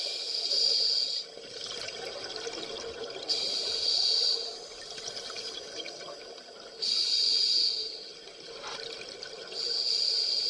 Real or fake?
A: real